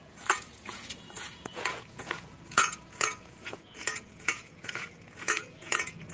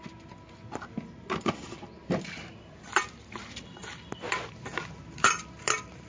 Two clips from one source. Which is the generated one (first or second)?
first